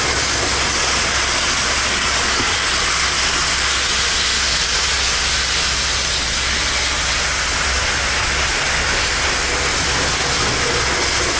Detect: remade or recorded recorded